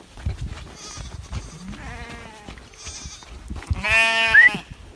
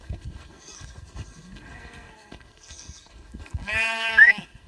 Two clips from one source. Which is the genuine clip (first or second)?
first